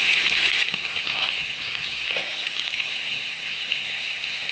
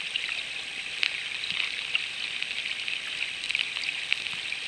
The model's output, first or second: first